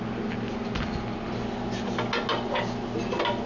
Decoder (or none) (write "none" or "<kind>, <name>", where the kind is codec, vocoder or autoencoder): none